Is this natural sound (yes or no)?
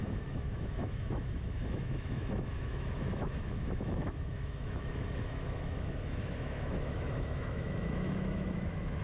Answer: no